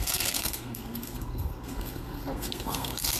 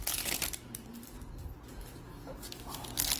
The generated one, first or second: first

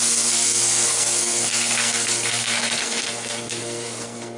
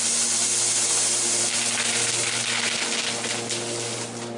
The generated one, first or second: first